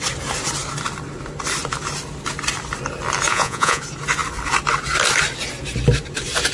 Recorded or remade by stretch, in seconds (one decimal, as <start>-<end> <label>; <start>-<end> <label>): 0.0-3.3 recorded; 3.3-3.8 remade; 3.8-6.5 recorded